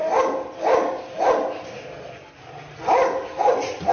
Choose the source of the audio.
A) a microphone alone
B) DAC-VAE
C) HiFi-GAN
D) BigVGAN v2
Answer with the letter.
A